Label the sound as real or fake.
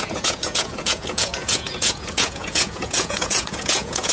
fake